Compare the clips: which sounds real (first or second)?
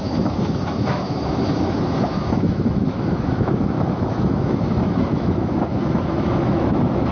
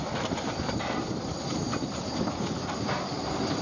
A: second